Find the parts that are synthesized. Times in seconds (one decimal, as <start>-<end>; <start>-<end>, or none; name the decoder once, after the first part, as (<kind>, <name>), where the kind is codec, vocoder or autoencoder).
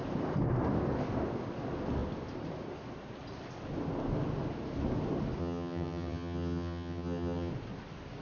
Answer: 5.4-7.5 (vocoder, HiFi-GAN)